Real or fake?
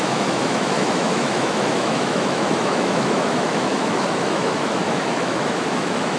fake